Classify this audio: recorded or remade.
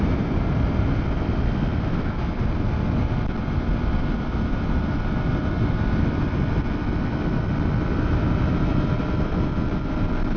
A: recorded